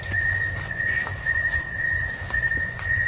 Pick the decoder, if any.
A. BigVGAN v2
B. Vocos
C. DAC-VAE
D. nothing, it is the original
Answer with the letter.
B